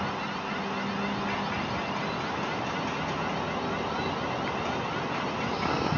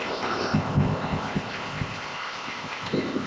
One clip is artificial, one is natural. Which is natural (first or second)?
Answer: first